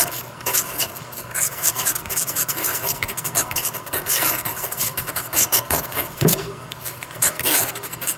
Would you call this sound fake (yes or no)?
yes